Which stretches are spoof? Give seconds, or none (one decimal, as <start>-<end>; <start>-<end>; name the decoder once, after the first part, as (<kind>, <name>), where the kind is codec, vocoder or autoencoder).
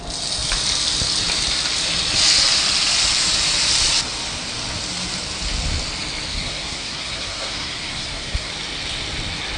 6.3-8.5 (codec, SNAC)